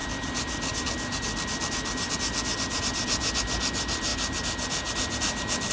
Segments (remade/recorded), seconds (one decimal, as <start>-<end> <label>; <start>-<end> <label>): 0.0-5.7 recorded